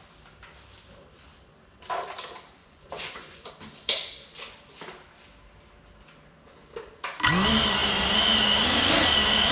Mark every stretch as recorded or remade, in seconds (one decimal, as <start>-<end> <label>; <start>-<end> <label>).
0.0-2.6 recorded; 2.6-3.5 remade; 3.5-9.5 recorded